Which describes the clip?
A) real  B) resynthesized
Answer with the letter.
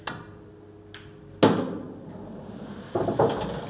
A